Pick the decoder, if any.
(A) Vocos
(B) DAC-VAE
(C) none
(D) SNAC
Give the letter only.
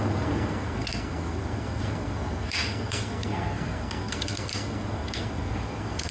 D